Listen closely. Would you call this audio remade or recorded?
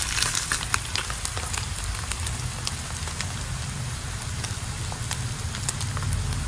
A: recorded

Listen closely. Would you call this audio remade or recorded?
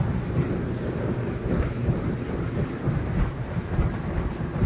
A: remade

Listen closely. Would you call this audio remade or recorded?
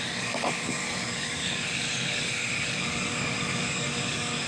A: remade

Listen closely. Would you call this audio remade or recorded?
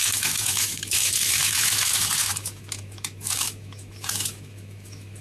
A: remade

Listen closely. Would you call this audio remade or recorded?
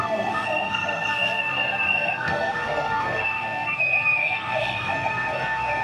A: remade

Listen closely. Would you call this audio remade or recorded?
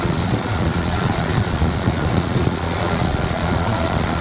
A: remade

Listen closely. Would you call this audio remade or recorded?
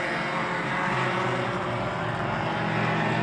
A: recorded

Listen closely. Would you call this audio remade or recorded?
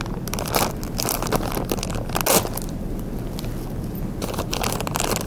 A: recorded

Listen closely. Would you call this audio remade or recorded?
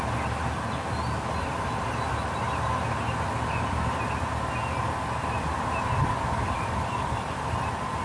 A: recorded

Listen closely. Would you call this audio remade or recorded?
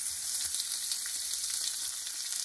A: recorded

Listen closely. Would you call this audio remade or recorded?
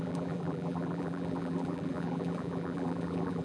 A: remade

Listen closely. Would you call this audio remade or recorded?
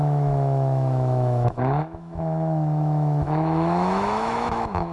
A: remade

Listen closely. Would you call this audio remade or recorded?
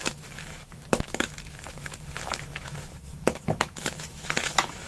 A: remade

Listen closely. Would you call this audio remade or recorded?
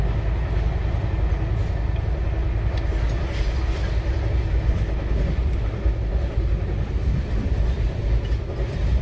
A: recorded